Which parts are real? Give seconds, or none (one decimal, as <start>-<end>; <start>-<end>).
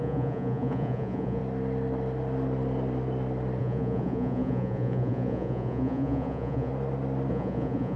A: 1.4-3.6; 6.7-7.3